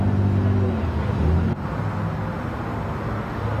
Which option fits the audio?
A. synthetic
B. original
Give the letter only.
B